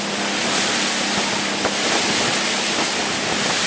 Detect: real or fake real